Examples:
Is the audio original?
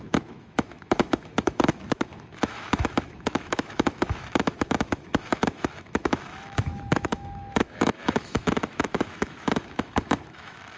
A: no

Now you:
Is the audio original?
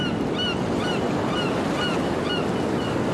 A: yes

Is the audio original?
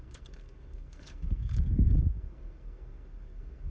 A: no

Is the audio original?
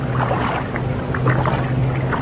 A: yes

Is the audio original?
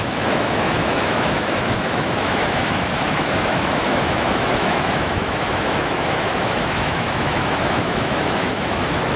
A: no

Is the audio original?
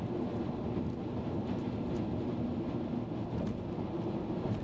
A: yes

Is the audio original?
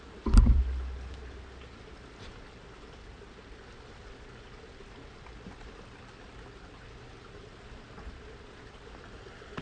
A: yes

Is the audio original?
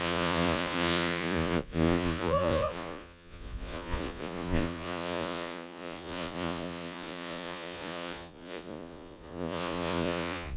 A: no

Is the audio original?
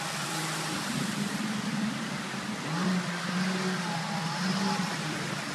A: yes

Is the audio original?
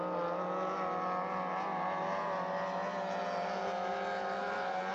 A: yes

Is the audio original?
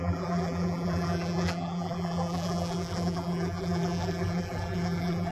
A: no